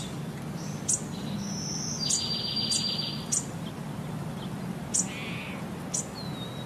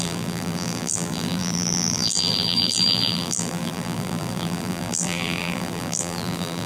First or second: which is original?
first